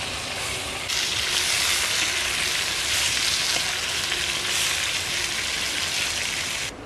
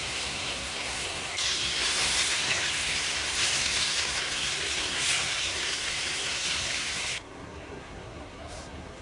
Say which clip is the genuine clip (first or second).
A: first